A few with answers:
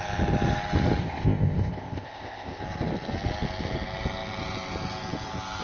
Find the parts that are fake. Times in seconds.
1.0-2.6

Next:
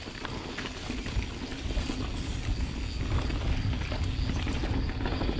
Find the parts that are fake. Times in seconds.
none

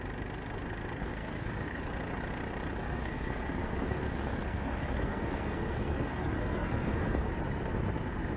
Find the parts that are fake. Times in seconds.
1.0-1.8; 2.8-7.3

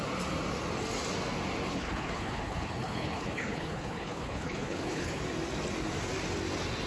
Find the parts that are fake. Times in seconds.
1.7-5.2

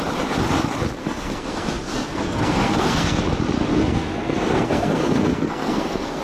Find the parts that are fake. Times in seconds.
1.0-3.2; 3.7-6.2